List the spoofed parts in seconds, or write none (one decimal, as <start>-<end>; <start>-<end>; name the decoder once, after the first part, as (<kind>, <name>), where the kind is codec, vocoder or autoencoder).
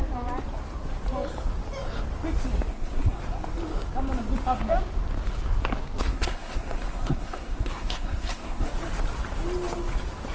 2.7-3.2 (codec, SNAC); 6.1-8.7